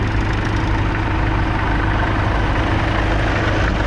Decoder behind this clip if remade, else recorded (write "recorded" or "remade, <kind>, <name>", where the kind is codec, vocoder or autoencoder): recorded